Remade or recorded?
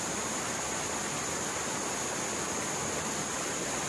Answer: recorded